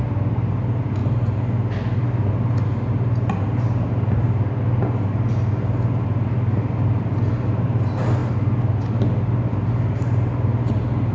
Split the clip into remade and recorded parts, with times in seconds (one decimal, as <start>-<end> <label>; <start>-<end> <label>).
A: 0.0-11.1 recorded